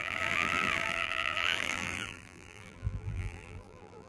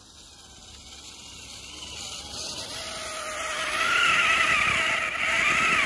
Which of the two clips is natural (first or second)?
second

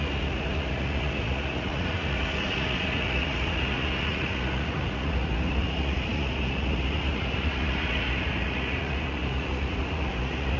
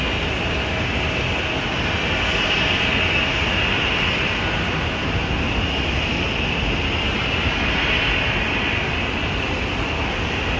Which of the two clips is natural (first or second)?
second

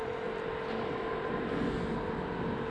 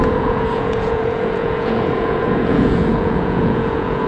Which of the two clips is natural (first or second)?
first